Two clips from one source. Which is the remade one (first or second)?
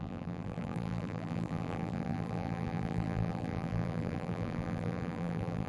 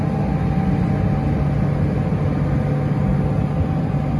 first